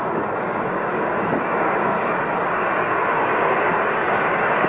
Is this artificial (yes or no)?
yes